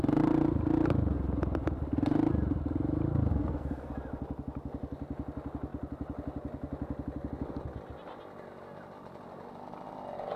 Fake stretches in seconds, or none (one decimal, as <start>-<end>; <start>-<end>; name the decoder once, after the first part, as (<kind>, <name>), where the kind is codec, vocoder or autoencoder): 3.3-3.9 (codec, SNAC)